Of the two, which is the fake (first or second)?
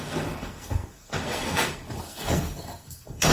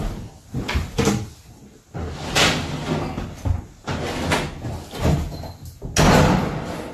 first